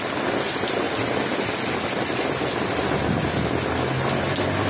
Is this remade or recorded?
recorded